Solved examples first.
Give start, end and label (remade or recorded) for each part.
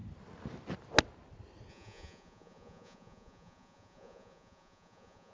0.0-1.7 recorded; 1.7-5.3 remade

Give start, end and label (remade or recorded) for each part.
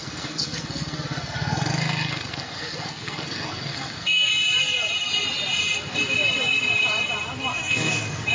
0.0-4.3 remade; 4.3-7.5 recorded; 7.5-8.3 remade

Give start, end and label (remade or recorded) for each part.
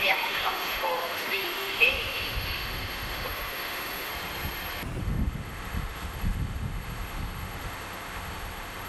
0.0-4.1 remade; 4.1-5.0 recorded; 5.0-8.9 remade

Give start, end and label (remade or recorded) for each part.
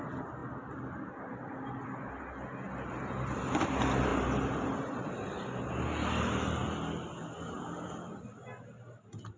0.0-0.4 recorded; 0.4-2.2 remade; 2.2-4.1 recorded; 4.1-5.1 remade; 5.1-6.6 recorded; 6.6-8.2 remade; 8.2-9.4 recorded